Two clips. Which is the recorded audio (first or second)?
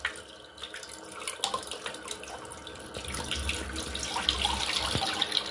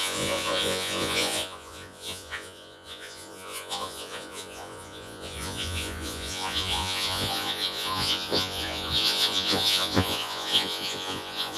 first